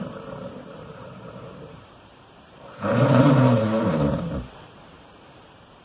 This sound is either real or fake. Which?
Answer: fake